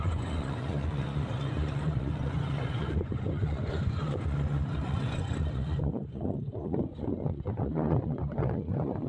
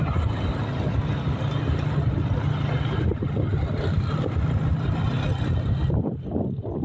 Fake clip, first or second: first